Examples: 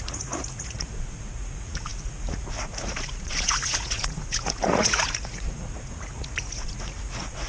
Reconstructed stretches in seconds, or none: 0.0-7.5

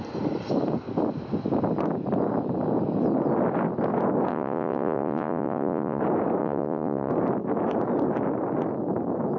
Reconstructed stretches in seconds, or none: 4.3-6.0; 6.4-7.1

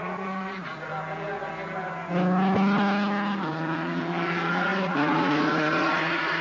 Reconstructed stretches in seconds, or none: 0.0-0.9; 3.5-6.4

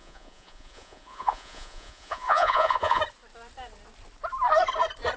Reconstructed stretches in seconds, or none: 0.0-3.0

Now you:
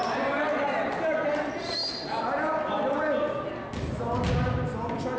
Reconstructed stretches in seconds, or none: none

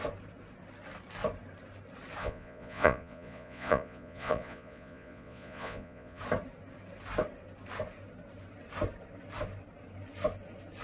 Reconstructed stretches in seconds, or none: 2.2-6.2